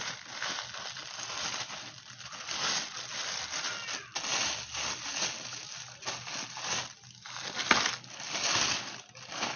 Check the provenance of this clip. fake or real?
real